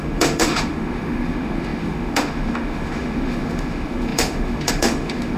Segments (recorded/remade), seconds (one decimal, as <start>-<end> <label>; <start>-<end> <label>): 0.0-5.4 remade